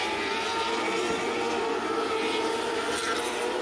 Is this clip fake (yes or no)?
no